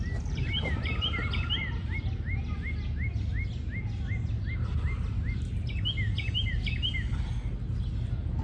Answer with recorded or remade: recorded